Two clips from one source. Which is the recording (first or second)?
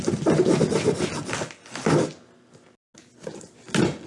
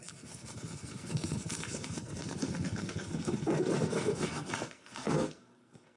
first